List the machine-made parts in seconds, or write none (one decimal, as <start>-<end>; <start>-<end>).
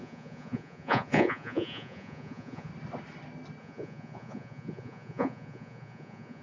0.0-2.7; 3.6-6.4